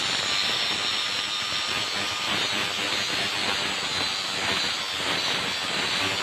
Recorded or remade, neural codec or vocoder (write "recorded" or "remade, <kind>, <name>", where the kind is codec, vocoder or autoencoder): recorded